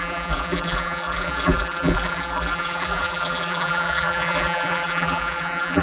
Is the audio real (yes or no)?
no